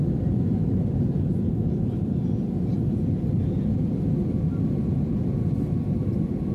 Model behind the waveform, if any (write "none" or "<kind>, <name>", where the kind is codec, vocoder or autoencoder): vocoder, BigVGAN v2